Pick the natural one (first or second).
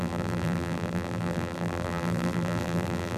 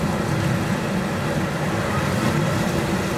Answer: second